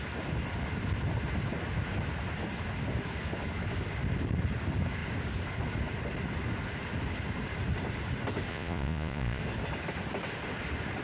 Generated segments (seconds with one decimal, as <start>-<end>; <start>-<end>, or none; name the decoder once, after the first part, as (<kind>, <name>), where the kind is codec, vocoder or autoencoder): 8.5-9.4 (vocoder, Vocos)